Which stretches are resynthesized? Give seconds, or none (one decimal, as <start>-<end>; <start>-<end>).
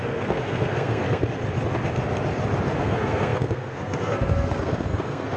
0.0-1.2; 2.8-5.4